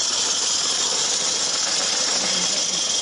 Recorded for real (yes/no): yes